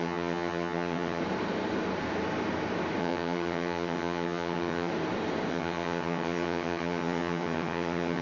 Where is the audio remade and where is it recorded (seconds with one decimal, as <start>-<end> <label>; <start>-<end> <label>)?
0.0-1.2 remade; 1.2-3.0 recorded; 3.0-4.9 remade; 4.9-5.5 recorded; 5.5-8.2 remade